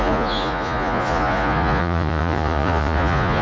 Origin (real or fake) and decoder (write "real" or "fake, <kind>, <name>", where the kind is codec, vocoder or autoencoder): fake, vocoder, Vocos